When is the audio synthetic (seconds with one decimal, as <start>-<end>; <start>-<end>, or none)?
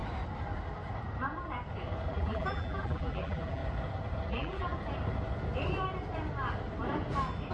2.1-3.6; 4.3-4.7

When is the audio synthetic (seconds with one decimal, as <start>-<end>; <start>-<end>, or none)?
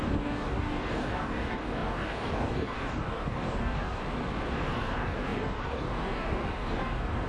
0.0-4.0; 4.5-7.3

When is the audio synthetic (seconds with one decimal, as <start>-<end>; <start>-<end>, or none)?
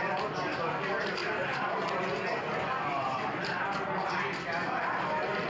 1.2-2.0; 2.9-3.4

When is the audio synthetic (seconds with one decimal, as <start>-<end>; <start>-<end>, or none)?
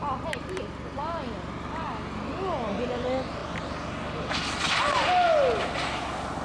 none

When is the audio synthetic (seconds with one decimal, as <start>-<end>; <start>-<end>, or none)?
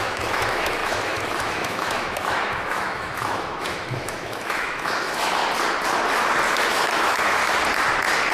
0.0-5.4; 6.5-7.4